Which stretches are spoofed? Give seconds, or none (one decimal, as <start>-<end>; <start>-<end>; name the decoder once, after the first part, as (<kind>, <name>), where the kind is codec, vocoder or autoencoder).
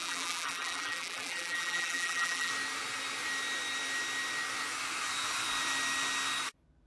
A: 0.0-2.5 (vocoder, BigVGAN v2)